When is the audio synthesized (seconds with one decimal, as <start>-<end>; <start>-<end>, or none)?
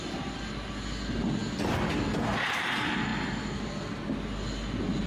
none